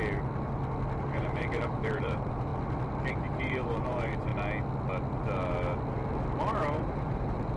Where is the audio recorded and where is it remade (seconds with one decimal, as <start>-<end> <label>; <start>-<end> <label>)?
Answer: 0.0-1.0 recorded; 1.0-2.5 remade; 2.5-3.1 recorded; 3.1-4.3 remade; 4.3-6.6 recorded; 6.6-7.6 remade